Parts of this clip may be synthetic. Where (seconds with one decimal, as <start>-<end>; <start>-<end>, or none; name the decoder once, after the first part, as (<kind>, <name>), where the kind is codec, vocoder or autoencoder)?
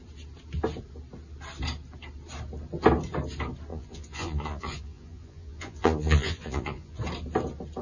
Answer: 3.7-7.0 (vocoder, Vocos)